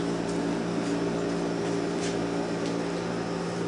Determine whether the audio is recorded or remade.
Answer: recorded